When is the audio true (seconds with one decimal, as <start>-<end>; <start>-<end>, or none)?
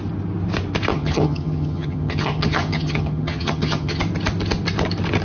0.0-0.9; 4.0-5.2